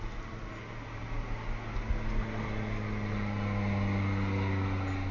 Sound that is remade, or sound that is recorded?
recorded